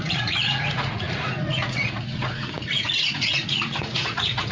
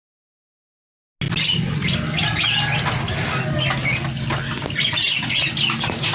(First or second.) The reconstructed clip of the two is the first